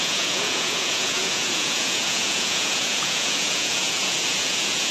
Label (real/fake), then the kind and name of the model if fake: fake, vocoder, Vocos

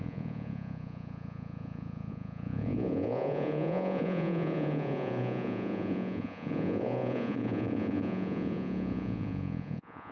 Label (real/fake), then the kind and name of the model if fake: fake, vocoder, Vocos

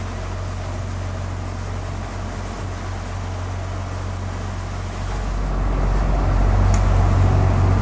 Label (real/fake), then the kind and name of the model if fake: real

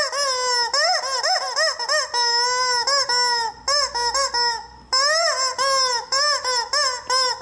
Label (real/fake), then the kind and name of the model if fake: real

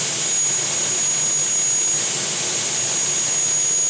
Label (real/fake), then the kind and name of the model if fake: real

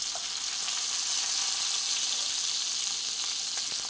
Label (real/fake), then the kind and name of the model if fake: real